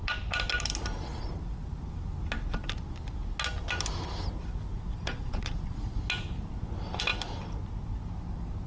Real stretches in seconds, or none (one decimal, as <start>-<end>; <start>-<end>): 0.0-4.9; 6.0-8.7

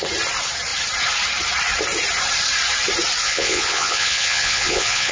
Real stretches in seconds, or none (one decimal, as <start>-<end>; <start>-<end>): 0.0-3.2

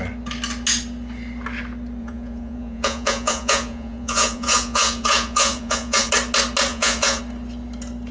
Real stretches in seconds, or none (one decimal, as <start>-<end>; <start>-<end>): 0.0-2.0; 6.1-6.7; 7.2-8.1